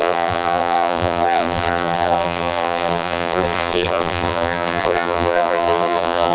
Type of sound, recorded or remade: remade